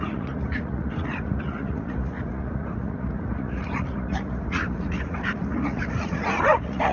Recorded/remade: remade